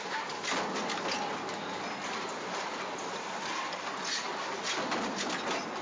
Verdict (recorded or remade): recorded